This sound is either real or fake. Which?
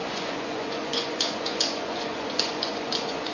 fake